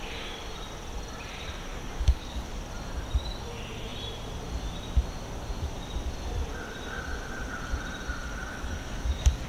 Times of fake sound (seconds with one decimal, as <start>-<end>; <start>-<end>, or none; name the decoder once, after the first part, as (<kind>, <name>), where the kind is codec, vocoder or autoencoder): 1.7-2.6 (codec, DAC); 8.5-9.5